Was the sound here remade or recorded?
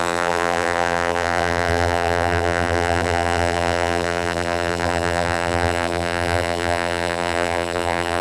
remade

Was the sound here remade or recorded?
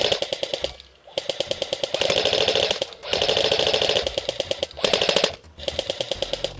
recorded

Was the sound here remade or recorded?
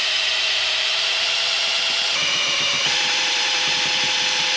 remade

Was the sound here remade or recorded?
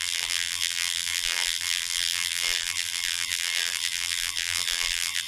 remade